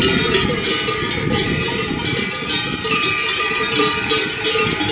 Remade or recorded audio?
remade